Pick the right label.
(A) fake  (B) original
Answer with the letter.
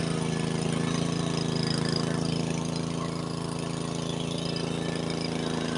B